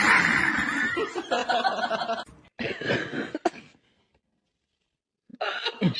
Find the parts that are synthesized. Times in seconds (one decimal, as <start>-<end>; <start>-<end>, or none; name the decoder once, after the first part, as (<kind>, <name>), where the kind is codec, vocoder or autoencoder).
none